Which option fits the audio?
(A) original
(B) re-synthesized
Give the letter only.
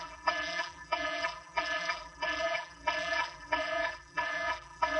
B